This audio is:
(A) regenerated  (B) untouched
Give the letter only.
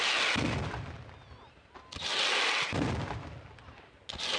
B